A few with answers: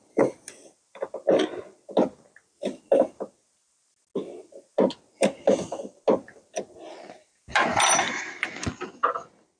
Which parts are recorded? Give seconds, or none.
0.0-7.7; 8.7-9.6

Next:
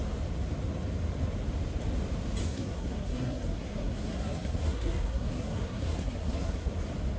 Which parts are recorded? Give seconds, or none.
0.0-2.4; 6.7-7.2